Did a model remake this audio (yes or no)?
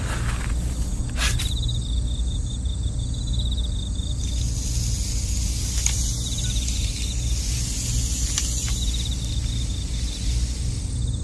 no